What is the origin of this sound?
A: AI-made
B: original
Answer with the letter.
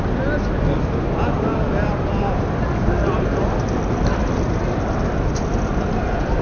B